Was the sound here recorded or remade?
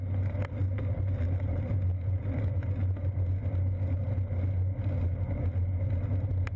recorded